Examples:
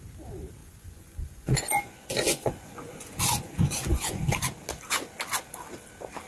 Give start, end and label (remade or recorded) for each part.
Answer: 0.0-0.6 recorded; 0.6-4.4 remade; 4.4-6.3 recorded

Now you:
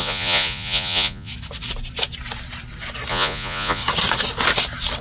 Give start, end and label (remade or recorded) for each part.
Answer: 0.0-1.3 remade; 1.3-3.1 recorded; 3.1-3.8 remade; 3.8-5.0 recorded

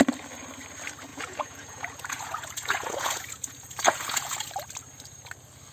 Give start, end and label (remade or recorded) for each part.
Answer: 0.0-1.1 recorded; 1.1-4.5 remade; 4.5-5.7 recorded